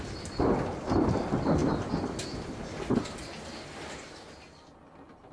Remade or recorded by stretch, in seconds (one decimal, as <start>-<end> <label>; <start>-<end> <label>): 0.0-5.3 recorded